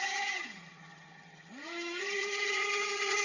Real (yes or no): no